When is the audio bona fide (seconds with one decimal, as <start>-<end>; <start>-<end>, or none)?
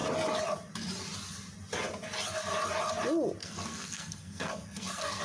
0.0-3.4